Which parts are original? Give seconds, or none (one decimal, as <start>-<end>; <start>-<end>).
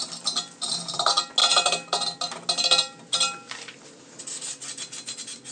0.0-5.5